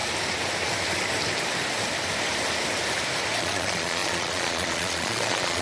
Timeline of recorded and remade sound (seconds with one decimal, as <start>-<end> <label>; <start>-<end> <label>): 0.0-3.4 recorded; 3.4-5.6 remade